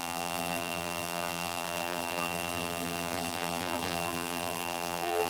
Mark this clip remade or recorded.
remade